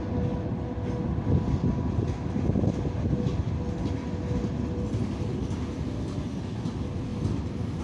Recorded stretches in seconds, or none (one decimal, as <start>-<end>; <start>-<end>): 0.0-7.8